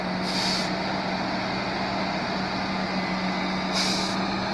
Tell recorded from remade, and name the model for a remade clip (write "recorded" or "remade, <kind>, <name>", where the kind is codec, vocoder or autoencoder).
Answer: recorded